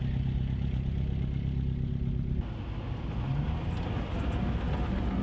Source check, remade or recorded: recorded